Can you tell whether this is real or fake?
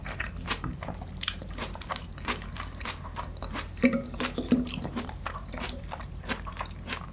fake